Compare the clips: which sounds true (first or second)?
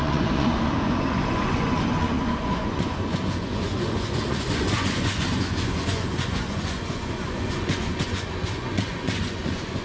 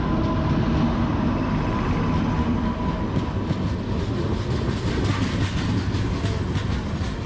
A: second